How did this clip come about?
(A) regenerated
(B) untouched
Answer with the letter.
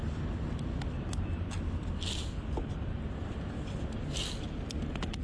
B